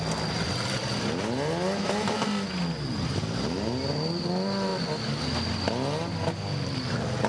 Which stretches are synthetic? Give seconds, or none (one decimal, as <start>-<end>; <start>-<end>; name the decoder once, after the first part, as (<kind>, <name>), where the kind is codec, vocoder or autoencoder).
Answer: none